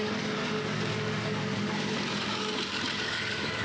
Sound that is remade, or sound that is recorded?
remade